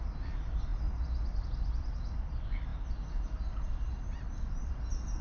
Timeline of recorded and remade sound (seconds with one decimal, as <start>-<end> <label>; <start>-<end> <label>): 0.0-5.2 recorded